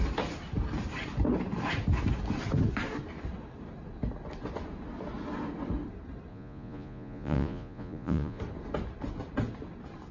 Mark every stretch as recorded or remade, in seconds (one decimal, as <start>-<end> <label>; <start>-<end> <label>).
0.0-6.3 recorded; 6.3-8.4 remade; 8.4-10.1 recorded